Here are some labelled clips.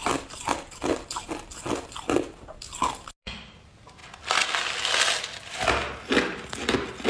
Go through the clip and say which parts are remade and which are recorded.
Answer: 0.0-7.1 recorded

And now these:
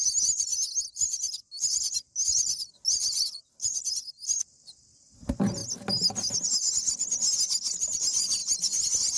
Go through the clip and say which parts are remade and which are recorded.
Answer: 0.0-9.2 recorded

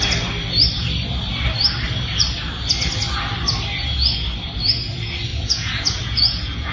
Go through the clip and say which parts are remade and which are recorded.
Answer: 0.0-5.3 recorded; 5.3-6.7 remade

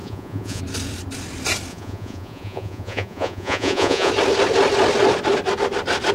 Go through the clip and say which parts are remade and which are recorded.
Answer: 0.0-0.6 remade; 0.6-1.7 recorded; 1.7-4.1 remade; 4.1-6.1 recorded

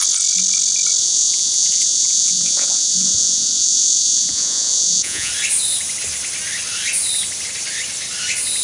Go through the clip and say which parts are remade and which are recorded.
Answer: 0.0-1.0 recorded; 1.0-5.3 remade; 5.3-8.6 recorded

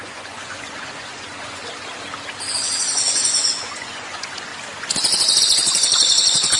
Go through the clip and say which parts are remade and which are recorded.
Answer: 0.0-1.6 remade; 1.6-2.5 recorded; 2.5-4.5 remade; 4.5-5.4 recorded; 5.4-6.6 remade